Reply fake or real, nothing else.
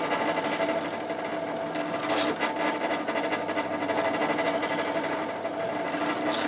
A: real